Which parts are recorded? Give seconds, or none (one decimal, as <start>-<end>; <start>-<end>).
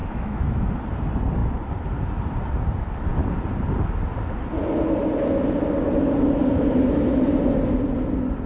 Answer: 0.7-8.5